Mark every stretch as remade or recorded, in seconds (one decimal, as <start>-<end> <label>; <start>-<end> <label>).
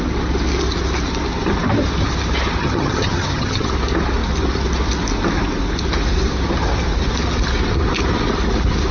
0.0-2.6 recorded; 2.6-3.7 remade; 3.7-8.9 recorded